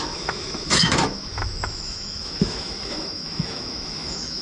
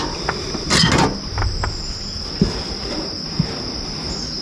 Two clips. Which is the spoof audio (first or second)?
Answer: first